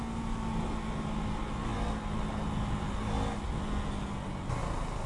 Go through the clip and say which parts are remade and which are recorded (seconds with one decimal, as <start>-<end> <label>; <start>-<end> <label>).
0.0-5.1 recorded

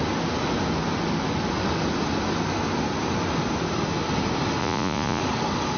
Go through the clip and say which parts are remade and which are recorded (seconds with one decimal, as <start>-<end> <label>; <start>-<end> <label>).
0.0-4.6 recorded; 4.6-5.2 remade; 5.2-5.8 recorded